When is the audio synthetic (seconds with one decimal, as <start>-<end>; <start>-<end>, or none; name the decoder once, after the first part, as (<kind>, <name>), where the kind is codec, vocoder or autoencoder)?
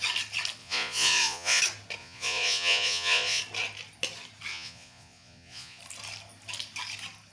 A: 0.6-1.6 (vocoder, Vocos); 2.0-3.4; 4.5-5.8